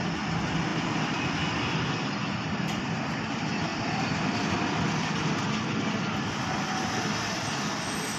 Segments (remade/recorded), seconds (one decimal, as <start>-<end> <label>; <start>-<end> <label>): 0.0-8.2 recorded